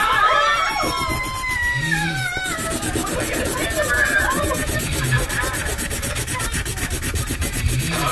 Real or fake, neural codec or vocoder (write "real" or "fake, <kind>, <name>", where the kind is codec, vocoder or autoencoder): real